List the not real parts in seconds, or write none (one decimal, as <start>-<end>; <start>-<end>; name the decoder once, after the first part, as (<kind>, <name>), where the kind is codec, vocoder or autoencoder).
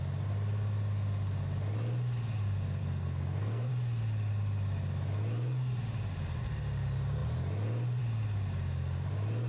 2.8-3.7 (codec, SNAC)